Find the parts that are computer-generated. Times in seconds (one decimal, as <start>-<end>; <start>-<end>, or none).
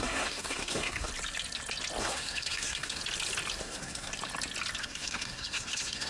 0.0-1.1; 2.0-3.0; 3.6-4.1; 4.8-6.1